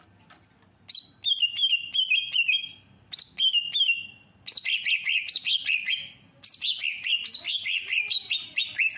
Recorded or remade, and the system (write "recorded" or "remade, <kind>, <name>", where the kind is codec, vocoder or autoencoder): recorded